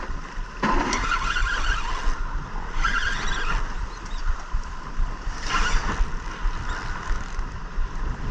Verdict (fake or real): real